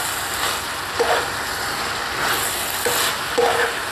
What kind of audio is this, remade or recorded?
recorded